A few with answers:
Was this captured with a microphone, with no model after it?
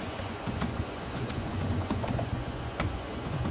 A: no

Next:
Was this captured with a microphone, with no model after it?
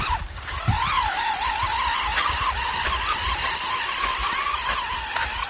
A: yes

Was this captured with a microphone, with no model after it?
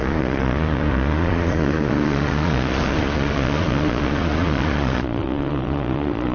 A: no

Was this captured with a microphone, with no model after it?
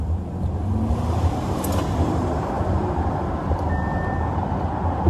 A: yes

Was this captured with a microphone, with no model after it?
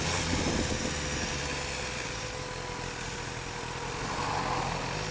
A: yes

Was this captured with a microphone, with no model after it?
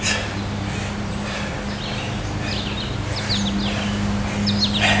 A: yes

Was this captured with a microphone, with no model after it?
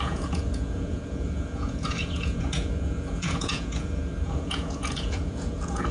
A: no